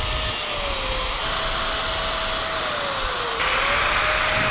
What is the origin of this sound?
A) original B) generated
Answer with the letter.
A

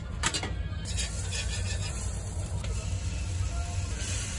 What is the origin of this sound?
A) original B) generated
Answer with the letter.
A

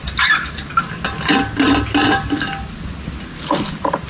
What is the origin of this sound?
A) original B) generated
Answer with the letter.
A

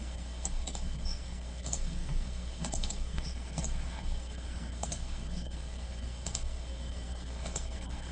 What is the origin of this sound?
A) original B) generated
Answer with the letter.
B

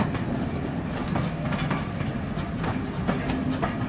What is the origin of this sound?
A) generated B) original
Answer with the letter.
B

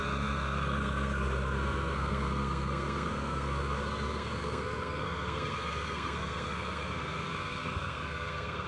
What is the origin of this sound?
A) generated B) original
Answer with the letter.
A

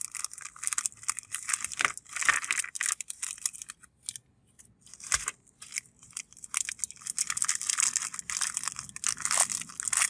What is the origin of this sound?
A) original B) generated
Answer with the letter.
A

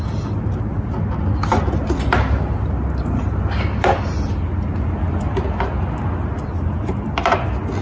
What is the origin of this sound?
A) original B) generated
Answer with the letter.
A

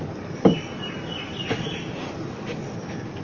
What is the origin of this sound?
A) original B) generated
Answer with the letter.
A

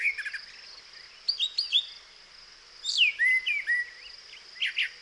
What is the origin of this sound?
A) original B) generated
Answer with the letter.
A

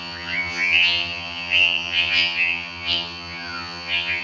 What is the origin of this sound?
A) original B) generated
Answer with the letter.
B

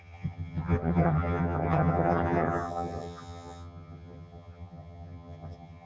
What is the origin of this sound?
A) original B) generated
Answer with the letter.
B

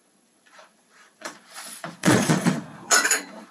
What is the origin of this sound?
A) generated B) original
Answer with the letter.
A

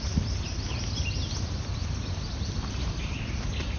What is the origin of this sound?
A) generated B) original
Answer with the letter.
B